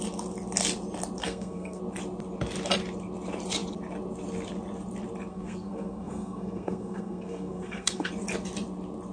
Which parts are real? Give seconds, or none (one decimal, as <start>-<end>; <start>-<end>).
0.0-1.2; 1.8-5.3; 8.1-9.1